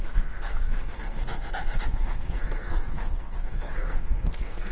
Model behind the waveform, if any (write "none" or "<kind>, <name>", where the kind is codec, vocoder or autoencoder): codec, SNAC